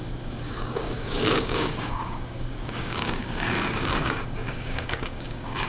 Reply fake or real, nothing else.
fake